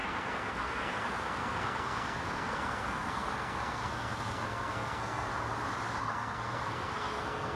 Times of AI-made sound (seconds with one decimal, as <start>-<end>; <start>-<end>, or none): 0.0-5.3; 6.0-7.6